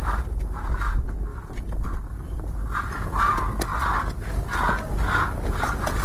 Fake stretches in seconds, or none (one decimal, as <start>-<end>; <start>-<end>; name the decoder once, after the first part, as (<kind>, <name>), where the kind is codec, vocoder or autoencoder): 1.3-3.2 (vocoder, BigVGAN v2)